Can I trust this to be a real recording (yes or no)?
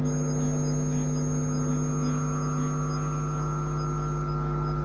yes